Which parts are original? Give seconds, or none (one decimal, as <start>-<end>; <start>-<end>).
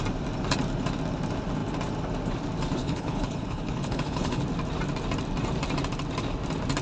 0.0-2.8; 4.4-6.8